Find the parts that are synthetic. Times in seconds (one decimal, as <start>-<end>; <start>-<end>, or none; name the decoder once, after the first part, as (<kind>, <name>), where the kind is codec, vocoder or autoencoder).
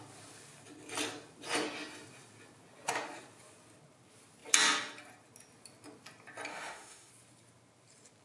6.5-7.1 (autoencoder, DAC-VAE)